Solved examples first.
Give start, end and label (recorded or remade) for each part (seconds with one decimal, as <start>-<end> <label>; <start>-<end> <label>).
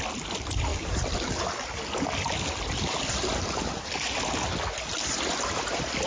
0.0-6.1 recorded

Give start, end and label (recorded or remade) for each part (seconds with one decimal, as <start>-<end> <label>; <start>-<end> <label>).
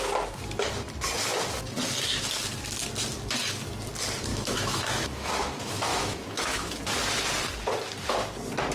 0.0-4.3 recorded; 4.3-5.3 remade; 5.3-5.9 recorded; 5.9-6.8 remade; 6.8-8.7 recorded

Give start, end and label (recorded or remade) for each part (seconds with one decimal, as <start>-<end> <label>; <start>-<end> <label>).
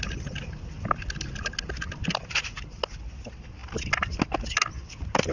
0.0-5.3 recorded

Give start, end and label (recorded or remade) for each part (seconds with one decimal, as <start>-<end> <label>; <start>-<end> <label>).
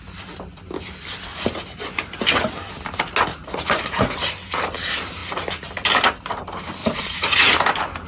0.0-1.3 recorded; 1.3-1.8 remade; 1.8-3.3 recorded; 3.3-4.3 remade; 4.3-6.8 recorded; 6.8-7.5 remade; 7.5-8.1 recorded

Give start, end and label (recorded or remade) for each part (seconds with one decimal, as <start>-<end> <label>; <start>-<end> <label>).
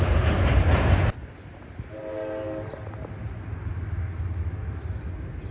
0.0-5.5 recorded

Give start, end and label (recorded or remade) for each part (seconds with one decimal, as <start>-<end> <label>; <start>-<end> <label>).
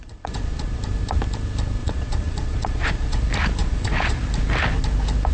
0.0-0.8 remade; 0.8-1.8 recorded; 1.8-3.2 remade; 3.2-3.6 recorded; 3.6-4.2 remade; 4.2-5.3 recorded